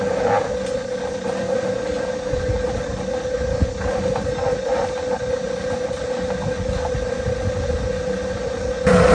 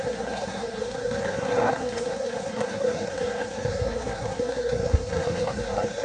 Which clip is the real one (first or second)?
first